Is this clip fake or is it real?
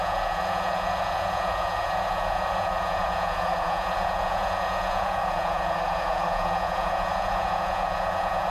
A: fake